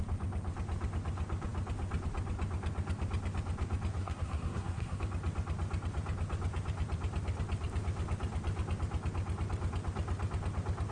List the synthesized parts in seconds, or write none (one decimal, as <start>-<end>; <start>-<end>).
4.0-5.0